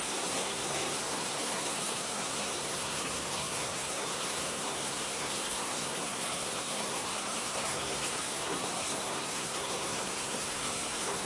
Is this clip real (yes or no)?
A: no